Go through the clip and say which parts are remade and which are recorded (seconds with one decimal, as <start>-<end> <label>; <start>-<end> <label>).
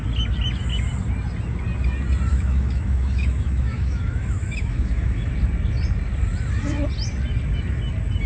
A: 0.0-2.3 recorded; 2.3-5.3 remade; 5.3-8.3 recorded